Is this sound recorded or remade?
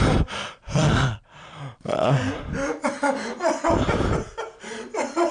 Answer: remade